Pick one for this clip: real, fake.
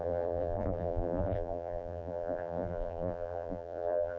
fake